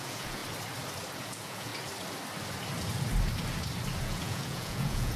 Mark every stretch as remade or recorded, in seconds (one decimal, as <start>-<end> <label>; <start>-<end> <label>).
0.0-0.4 remade; 0.4-1.2 recorded; 1.2-1.7 remade; 1.7-4.0 recorded; 4.0-5.2 remade